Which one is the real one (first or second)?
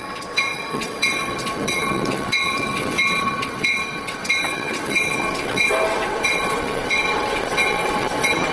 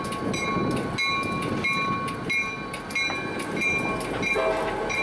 second